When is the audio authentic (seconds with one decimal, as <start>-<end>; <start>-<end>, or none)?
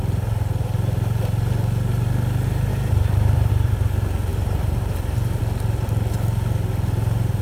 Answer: 0.0-2.7; 3.5-4.3; 5.4-7.4